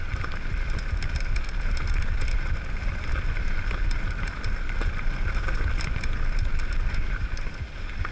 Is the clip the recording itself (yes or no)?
yes